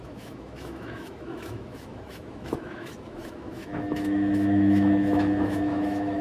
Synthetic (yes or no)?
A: yes